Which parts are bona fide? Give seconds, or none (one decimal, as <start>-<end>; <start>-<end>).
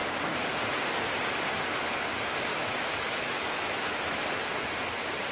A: 0.0-2.5; 4.2-5.3